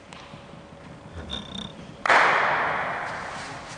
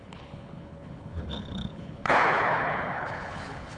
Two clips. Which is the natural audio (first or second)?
first